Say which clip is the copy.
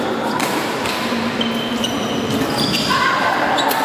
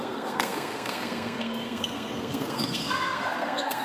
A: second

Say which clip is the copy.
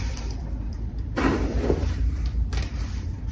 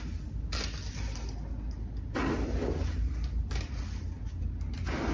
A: first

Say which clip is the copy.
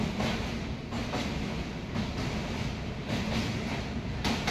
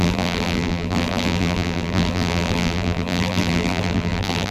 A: second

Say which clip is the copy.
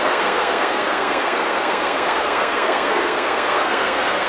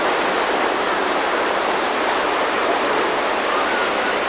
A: first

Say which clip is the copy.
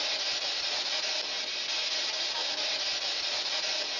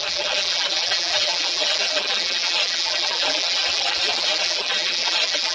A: second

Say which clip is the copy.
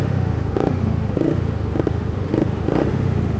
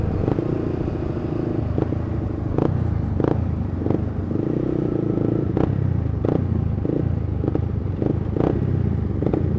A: first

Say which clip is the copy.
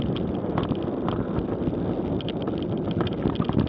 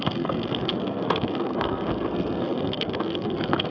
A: second